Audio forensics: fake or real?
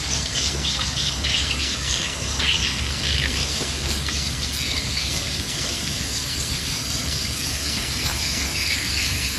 fake